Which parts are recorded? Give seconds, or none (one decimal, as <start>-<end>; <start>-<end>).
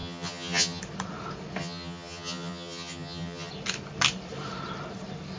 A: 0.8-1.6; 3.5-5.4